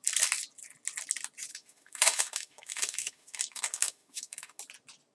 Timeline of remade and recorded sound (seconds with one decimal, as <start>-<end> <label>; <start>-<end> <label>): 0.0-1.5 recorded; 1.5-4.6 remade; 4.6-5.1 recorded